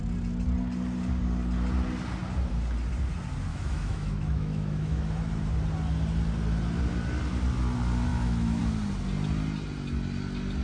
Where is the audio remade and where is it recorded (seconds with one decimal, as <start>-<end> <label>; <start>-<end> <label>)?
0.0-3.5 recorded; 3.5-5.2 remade; 5.2-8.1 recorded; 8.1-8.6 remade; 8.6-10.6 recorded